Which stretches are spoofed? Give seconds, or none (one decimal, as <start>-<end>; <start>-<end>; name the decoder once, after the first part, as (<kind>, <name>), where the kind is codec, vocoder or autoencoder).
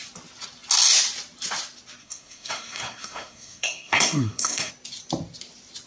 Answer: 2.0-4.7 (codec, SNAC)